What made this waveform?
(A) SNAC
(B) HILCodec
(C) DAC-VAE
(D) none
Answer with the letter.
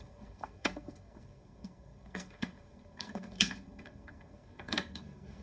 A